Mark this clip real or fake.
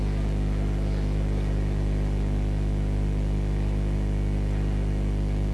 real